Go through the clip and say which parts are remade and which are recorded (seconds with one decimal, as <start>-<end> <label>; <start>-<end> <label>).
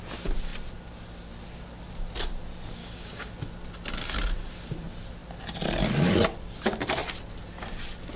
0.0-2.8 recorded; 2.8-3.3 remade; 3.3-8.2 recorded